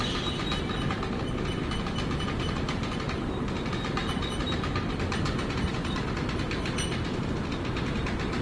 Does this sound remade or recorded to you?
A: recorded